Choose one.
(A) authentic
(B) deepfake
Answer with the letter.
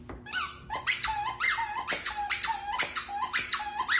A